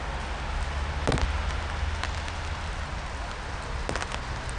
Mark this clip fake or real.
real